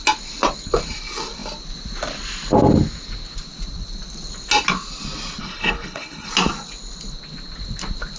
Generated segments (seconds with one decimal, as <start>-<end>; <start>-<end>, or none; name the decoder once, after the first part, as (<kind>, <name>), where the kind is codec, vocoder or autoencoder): 5.4-6.3 (codec, HILCodec)